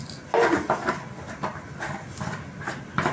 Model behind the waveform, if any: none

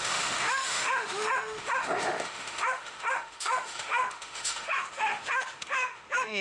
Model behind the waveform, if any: autoencoder, DAC-VAE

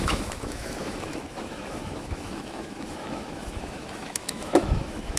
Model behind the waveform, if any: autoencoder, DAC-VAE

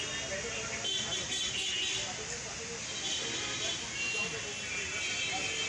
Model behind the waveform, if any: none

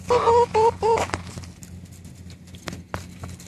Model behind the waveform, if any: none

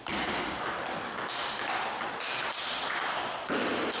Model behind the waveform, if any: none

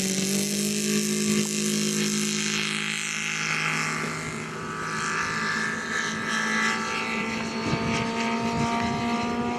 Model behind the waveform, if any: none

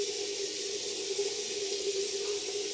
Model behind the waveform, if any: none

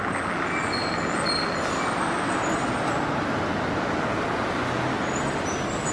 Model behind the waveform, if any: none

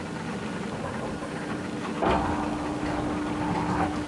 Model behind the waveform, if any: none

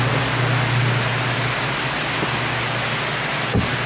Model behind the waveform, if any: none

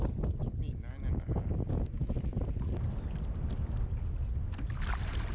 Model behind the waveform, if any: none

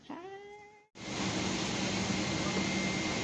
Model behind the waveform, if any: none